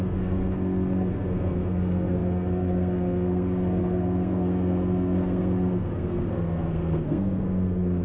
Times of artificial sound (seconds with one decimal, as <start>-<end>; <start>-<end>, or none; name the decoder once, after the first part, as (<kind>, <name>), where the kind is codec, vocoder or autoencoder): 0.0-8.0 (codec, SNAC)